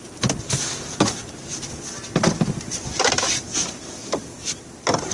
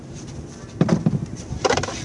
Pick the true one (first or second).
first